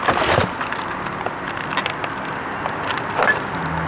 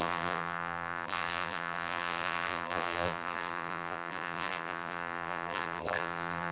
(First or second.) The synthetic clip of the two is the second